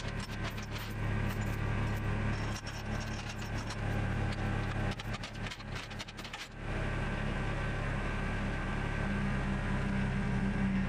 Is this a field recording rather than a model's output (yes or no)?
yes